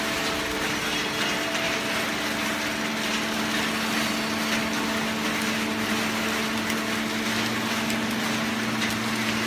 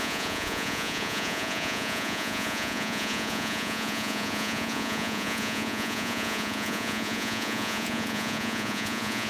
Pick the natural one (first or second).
first